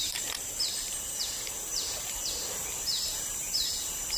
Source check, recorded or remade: remade